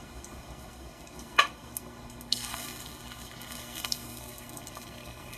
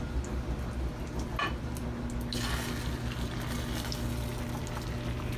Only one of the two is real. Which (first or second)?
second